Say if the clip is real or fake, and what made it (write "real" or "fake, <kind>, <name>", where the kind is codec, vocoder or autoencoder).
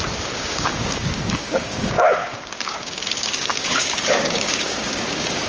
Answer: fake, codec, DAC